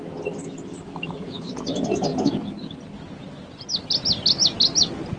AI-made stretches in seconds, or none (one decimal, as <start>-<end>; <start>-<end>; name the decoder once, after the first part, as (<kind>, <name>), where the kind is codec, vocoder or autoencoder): 0.4-1.5 (autoencoder, DAC-VAE)